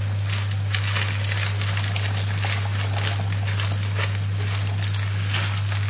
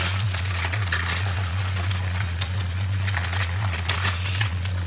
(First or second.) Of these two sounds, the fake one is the second